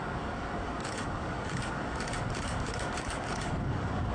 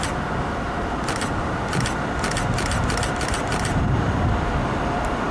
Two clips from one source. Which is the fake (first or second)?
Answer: first